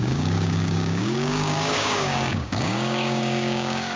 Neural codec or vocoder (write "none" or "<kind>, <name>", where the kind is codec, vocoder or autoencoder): codec, DAC